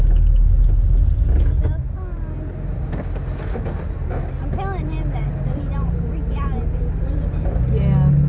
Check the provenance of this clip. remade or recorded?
recorded